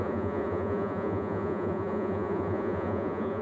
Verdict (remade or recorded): remade